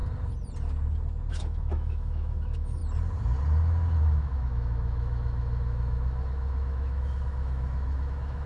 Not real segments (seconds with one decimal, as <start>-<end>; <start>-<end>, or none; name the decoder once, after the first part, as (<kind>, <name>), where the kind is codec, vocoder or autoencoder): 1.3-2.8 (autoencoder, DAC-VAE); 4.0-8.5